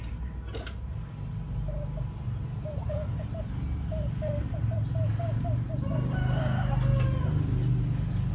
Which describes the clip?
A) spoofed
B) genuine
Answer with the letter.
B